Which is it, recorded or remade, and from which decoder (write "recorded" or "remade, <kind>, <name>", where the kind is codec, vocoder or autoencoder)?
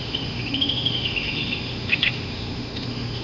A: remade, autoencoder, DAC-VAE